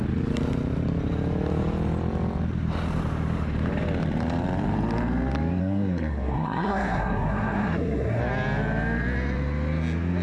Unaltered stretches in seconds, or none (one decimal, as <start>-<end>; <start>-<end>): 0.0-5.6; 8.2-10.2